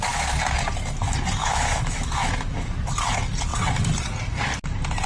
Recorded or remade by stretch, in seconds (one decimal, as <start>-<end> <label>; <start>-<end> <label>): 0.0-1.4 recorded; 1.4-2.3 remade; 2.3-5.1 recorded